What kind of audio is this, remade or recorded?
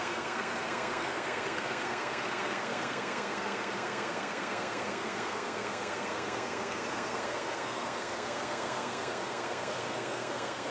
remade